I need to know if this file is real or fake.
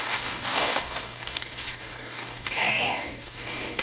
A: fake